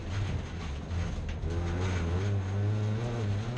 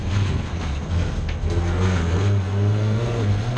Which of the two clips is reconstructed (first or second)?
second